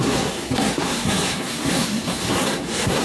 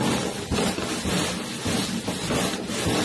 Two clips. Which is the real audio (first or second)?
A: second